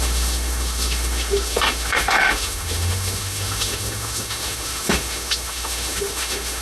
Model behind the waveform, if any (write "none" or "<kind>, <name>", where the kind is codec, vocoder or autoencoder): autoencoder, DAC-VAE